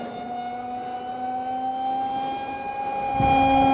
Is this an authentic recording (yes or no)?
yes